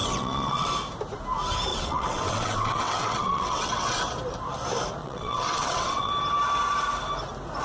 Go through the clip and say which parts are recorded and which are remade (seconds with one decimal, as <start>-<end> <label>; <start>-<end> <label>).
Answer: 0.0-0.7 remade; 0.7-1.7 recorded; 1.7-4.0 remade; 4.0-5.0 recorded; 5.0-6.1 remade; 6.1-7.6 recorded